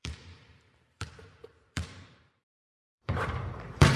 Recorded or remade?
remade